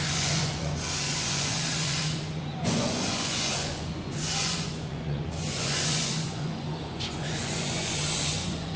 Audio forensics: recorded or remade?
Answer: remade